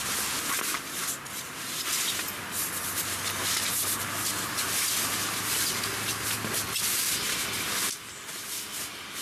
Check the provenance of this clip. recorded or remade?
recorded